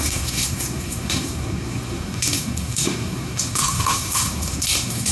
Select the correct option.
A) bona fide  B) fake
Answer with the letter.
B